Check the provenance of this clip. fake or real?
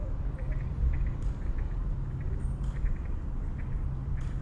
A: fake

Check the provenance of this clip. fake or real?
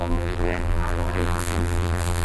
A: fake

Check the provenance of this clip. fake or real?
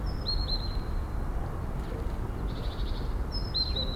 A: real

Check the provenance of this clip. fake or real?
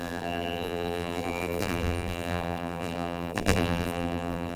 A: fake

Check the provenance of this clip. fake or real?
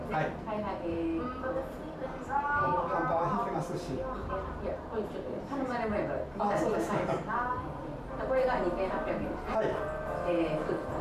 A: fake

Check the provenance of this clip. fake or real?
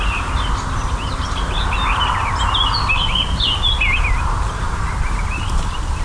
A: real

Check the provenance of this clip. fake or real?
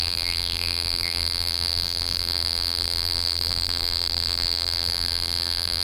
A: fake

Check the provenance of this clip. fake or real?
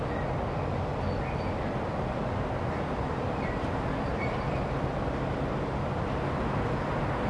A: real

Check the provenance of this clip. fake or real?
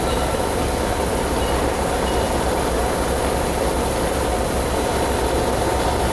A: real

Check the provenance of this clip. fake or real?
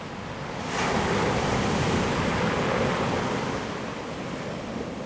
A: real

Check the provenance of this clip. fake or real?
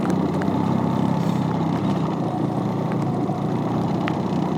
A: fake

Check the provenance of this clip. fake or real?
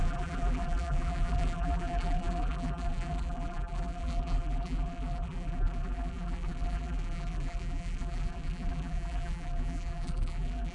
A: fake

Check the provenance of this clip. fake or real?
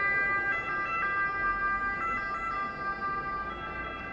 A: real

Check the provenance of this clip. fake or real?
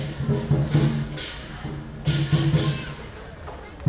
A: real